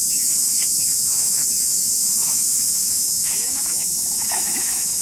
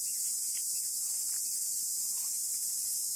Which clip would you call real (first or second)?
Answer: second